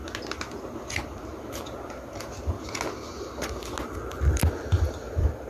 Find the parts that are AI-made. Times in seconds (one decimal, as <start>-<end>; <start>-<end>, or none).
none